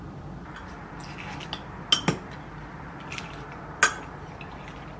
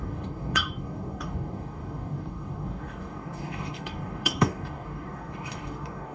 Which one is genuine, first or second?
first